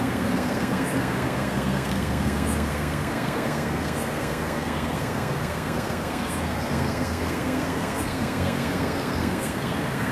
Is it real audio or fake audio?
fake